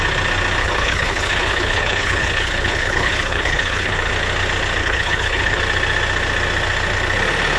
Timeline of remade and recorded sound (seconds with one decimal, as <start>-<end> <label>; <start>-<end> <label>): 0.0-0.6 recorded; 0.6-4.1 remade; 4.1-4.8 recorded; 4.8-5.6 remade; 5.6-7.6 recorded